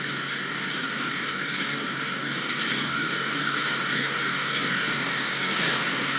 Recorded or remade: remade